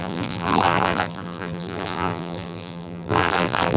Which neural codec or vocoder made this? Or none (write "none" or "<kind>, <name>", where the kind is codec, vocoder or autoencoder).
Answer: vocoder, BigVGAN v2